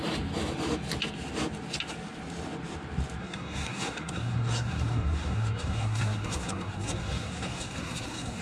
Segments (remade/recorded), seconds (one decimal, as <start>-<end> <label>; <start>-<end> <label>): 0.0-3.2 recorded; 3.2-8.4 remade